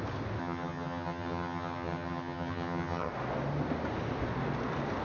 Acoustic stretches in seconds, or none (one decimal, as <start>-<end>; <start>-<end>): 0.0-0.4; 3.1-5.0